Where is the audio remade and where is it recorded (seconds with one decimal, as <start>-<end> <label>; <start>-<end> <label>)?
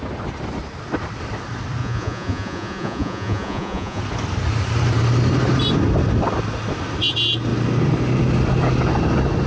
0.0-1.8 recorded; 1.8-4.0 remade; 4.0-9.5 recorded